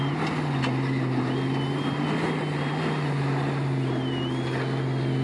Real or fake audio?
real